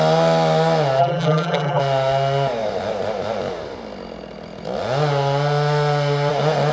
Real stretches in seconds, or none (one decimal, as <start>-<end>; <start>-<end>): 0.0-1.0; 1.8-6.7